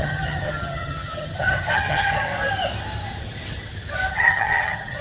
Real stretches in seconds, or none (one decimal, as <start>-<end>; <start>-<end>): 2.3-4.1